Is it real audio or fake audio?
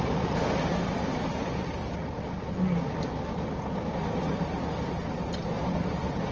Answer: real